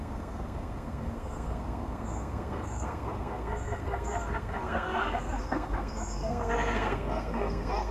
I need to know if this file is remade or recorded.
remade